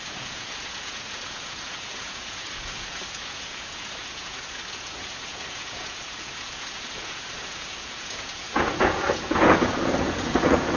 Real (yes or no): no